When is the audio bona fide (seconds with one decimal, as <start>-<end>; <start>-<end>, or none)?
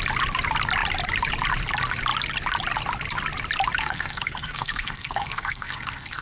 0.0-3.8